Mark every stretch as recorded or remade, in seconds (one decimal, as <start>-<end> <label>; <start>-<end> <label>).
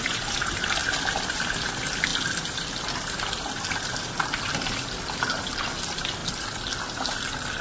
0.0-7.6 recorded